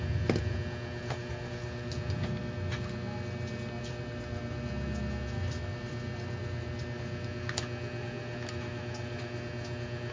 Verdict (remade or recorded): recorded